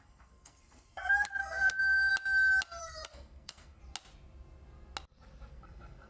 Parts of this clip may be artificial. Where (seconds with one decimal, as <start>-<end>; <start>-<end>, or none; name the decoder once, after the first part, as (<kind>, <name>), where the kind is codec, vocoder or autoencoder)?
0.0-2.1 (codec, SNAC); 2.8-3.8; 5.5-6.1